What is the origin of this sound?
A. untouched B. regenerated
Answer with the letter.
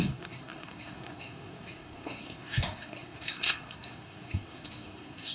B